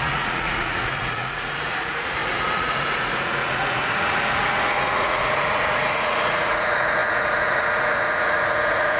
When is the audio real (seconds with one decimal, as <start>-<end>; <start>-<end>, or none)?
none